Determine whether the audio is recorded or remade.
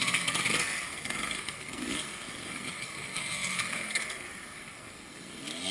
remade